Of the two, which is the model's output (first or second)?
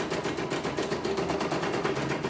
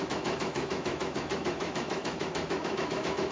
second